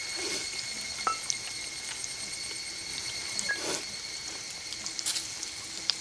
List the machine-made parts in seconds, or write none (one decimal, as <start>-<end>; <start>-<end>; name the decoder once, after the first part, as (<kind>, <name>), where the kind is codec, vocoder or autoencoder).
2.9-3.5 (vocoder, BigVGAN v2)